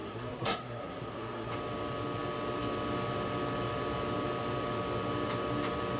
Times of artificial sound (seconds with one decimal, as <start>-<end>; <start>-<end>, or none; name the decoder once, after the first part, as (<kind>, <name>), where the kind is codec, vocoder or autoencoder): 0.0-1.5 (codec, SNAC)